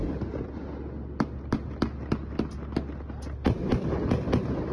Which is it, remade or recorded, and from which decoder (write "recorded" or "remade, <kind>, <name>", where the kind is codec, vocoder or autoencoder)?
recorded